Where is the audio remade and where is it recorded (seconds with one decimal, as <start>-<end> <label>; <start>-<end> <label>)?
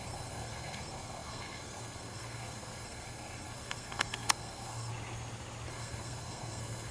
0.0-4.9 remade; 4.9-5.7 recorded; 5.7-6.9 remade